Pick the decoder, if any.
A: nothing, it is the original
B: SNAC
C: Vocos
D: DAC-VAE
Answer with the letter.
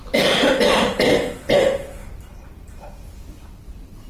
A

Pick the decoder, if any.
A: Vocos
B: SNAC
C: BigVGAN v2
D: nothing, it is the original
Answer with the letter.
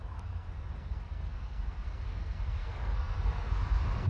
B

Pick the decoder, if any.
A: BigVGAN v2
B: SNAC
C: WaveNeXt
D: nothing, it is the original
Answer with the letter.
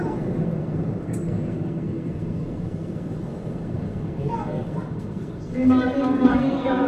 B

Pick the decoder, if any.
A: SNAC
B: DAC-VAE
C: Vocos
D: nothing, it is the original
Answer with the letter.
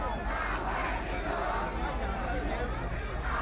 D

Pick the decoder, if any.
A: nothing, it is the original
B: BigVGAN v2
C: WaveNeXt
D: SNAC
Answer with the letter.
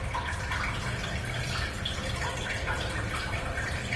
A